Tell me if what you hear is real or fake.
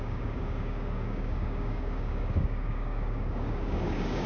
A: fake